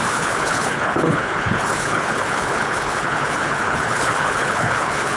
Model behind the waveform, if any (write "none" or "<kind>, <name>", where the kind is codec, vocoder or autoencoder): codec, HILCodec